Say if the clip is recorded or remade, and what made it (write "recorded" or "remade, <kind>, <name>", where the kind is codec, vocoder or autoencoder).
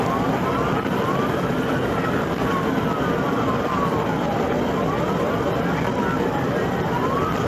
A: recorded